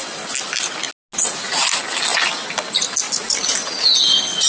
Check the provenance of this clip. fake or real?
real